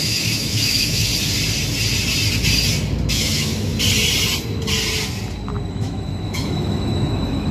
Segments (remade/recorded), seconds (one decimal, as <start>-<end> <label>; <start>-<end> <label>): 0.0-1.1 remade; 1.1-3.1 recorded; 3.1-3.7 remade; 3.7-5.7 recorded; 5.7-7.5 remade